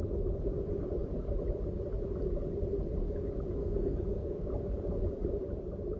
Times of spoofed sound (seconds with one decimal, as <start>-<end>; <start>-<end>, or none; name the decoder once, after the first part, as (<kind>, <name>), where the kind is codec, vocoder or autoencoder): 3.6-4.5 (codec, SNAC)